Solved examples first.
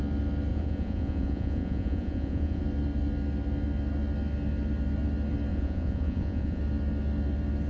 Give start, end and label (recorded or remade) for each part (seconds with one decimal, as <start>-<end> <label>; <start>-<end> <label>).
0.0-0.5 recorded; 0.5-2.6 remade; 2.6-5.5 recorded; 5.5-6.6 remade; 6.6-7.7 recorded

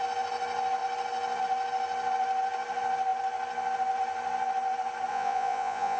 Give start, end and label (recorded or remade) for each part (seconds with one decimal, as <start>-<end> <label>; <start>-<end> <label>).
0.0-5.1 recorded; 5.1-6.0 remade

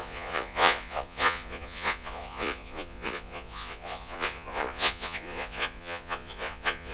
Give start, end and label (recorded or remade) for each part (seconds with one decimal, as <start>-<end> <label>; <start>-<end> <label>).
0.0-6.9 remade

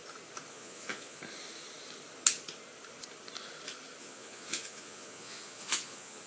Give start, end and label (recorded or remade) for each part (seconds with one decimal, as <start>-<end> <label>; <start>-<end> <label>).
0.0-0.5 recorded; 0.5-1.2 remade; 1.2-4.0 recorded; 4.0-6.3 remade

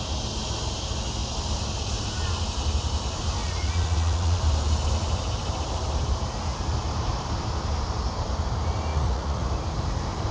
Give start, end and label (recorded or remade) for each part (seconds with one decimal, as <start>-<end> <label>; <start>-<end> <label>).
0.0-3.4 recorded; 3.4-4.4 remade; 4.4-8.9 recorded; 8.9-9.5 remade; 9.5-10.3 recorded

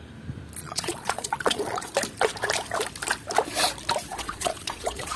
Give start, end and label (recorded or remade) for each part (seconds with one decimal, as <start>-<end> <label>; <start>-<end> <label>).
0.0-0.6 recorded; 0.6-1.9 remade; 1.9-4.1 recorded; 4.1-5.2 remade

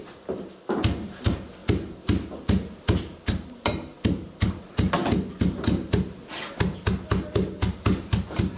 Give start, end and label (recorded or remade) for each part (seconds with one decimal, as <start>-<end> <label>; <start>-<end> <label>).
0.0-8.6 recorded